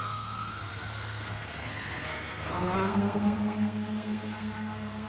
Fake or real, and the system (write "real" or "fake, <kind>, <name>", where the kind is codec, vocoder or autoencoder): fake, codec, SNAC